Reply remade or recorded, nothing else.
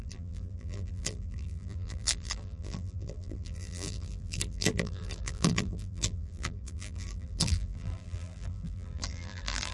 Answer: remade